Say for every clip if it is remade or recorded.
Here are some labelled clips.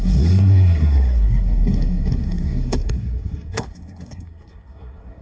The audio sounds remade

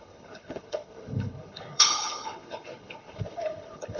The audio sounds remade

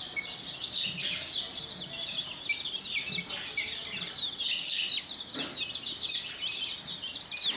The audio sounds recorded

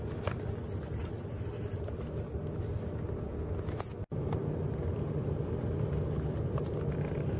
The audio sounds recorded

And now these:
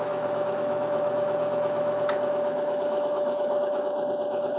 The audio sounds remade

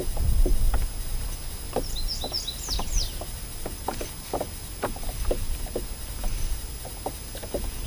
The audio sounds recorded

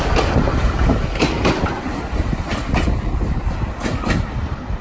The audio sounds recorded